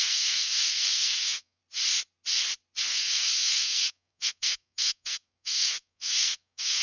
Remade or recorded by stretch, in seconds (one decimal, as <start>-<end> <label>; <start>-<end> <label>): 0.0-1.6 remade; 1.6-2.9 recorded; 2.9-6.8 remade